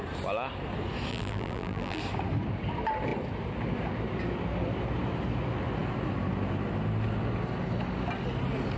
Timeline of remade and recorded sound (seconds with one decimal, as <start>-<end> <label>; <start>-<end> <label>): 0.0-1.1 recorded; 1.1-2.0 remade; 2.0-8.8 recorded

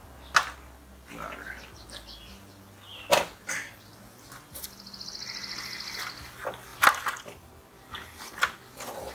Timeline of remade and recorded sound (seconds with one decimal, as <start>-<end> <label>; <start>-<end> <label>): 0.0-6.7 recorded; 6.7-8.4 remade; 8.4-9.1 recorded

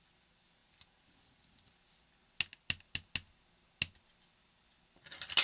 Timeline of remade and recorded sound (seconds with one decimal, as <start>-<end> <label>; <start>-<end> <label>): 0.0-5.4 recorded

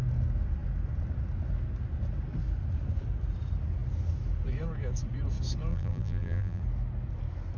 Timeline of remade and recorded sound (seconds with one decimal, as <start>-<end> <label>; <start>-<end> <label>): 0.0-5.7 recorded; 5.7-6.6 remade; 6.6-7.6 recorded

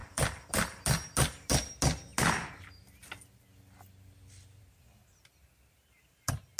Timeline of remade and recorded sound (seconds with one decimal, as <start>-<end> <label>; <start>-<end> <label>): 0.0-0.5 remade; 0.5-6.6 recorded

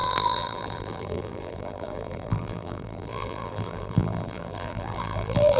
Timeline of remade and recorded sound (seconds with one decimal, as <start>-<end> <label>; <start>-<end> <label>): 0.0-5.6 remade

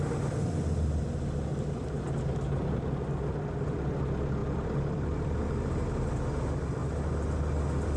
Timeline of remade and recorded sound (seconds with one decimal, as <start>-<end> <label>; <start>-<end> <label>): 0.0-4.4 recorded; 4.4-5.8 remade; 5.8-8.0 recorded